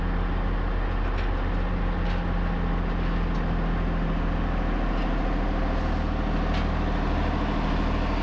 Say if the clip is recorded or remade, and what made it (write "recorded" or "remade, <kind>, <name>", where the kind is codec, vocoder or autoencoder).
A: recorded